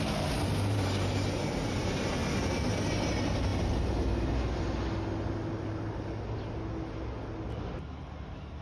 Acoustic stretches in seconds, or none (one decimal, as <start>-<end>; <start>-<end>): 0.0-8.6